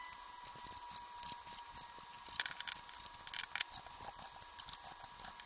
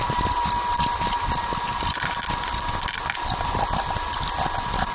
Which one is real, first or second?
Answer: first